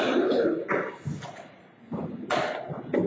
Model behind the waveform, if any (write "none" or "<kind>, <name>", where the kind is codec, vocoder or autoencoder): none